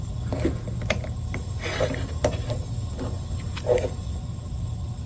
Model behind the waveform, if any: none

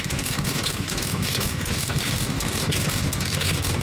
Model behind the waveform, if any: codec, DAC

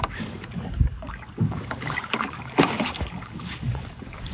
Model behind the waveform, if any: codec, DAC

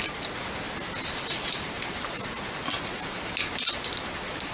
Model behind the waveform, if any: none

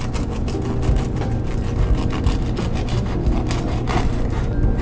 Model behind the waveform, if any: none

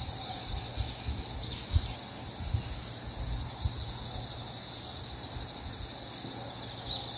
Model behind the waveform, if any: none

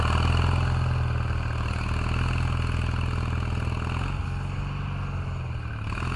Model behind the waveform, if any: none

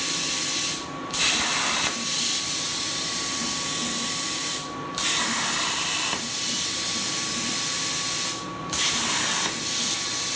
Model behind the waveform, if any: none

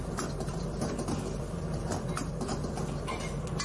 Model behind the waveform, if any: none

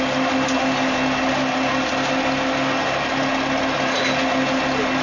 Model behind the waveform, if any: none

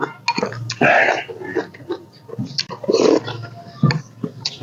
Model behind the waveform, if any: none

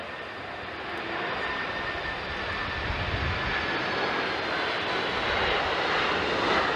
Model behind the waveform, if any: none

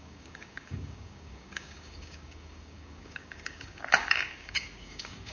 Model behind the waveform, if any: codec, DAC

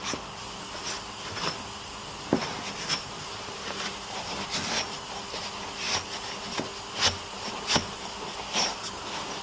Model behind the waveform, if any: none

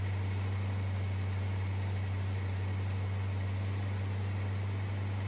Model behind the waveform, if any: none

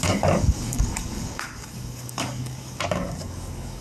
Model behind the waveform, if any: codec, DAC